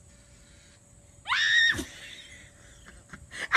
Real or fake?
real